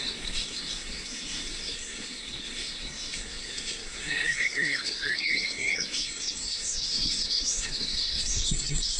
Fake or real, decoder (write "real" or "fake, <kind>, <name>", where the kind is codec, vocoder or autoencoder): fake, codec, SNAC